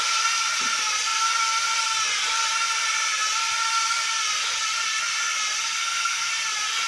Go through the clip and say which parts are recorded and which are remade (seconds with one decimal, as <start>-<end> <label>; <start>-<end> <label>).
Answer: 0.0-5.8 recorded; 5.8-6.3 remade; 6.3-6.9 recorded